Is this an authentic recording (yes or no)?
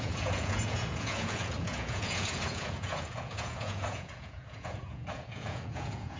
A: no